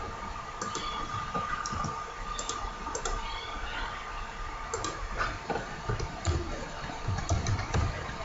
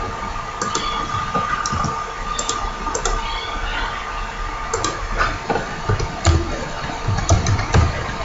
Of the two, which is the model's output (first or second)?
first